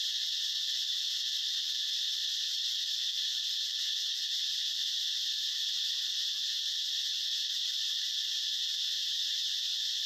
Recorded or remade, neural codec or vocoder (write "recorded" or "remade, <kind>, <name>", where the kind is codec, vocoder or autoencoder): remade, vocoder, BigVGAN v2